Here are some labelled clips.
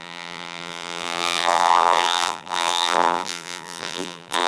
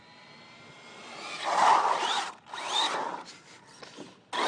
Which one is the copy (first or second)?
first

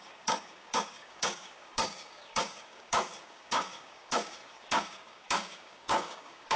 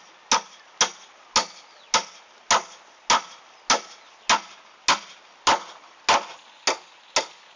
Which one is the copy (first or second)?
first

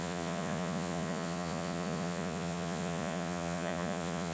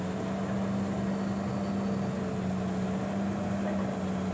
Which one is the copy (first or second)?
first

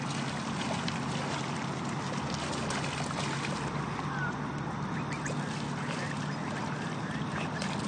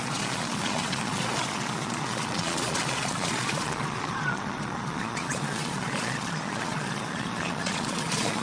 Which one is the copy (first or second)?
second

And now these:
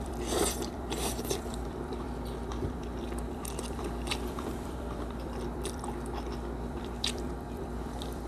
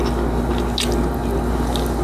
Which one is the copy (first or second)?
first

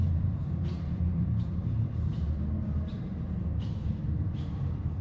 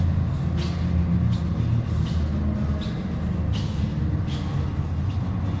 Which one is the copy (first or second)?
first